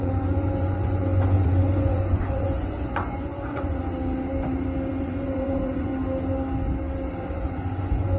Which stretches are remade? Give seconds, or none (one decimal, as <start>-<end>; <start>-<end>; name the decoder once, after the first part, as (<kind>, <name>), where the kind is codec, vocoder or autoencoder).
0.0-3.8 (vocoder, Vocos); 5.0-5.9; 7.2-8.2